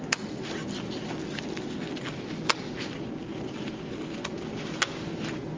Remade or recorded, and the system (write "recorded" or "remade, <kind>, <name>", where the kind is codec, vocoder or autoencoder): recorded